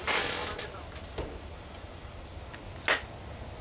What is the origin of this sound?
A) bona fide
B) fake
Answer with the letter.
A